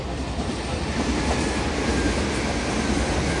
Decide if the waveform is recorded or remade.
recorded